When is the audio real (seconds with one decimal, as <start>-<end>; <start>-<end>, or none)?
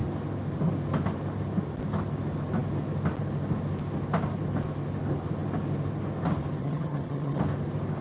0.0-6.6; 7.4-8.0